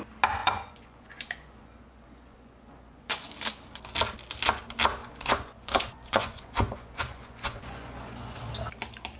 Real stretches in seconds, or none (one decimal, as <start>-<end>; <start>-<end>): 0.0-0.4; 3.3-5.0; 8.4-9.2